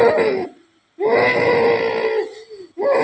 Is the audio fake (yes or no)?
no